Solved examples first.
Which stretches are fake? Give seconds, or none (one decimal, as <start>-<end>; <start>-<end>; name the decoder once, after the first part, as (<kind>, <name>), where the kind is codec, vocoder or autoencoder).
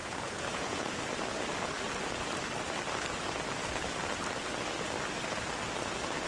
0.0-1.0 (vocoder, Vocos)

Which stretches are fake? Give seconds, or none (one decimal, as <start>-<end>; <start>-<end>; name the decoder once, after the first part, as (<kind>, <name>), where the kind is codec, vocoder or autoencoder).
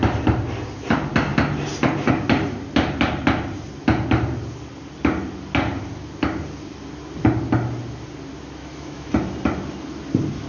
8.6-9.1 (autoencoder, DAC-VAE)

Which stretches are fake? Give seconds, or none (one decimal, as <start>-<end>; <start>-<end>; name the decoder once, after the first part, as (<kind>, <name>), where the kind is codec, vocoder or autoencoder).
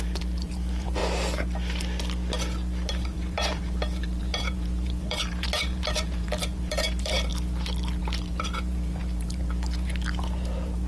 0.0-1.0 (vocoder, BigVGAN v2); 2.9-7.3; 8.0-10.9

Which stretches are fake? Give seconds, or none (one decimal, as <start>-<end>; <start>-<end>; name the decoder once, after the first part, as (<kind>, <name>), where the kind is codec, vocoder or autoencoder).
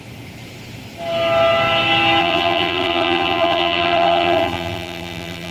2.2-5.5 (vocoder, BigVGAN v2)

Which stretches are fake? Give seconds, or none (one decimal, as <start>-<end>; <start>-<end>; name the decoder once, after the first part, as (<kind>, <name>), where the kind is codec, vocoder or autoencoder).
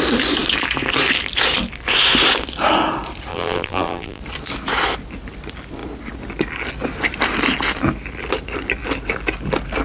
3.3-4.2 (vocoder, BigVGAN v2)